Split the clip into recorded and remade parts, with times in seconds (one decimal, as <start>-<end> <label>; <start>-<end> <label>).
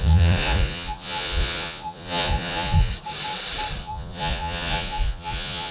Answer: 0.0-2.9 remade; 2.9-3.8 recorded; 3.8-5.7 remade